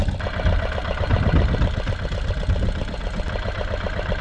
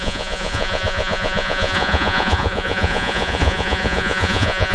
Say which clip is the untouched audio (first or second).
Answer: first